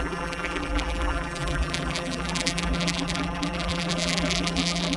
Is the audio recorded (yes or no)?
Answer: no